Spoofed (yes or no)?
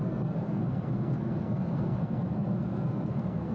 yes